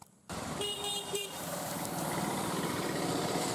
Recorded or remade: remade